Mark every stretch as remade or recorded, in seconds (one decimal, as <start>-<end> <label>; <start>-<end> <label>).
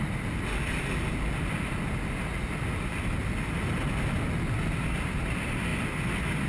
0.0-6.5 recorded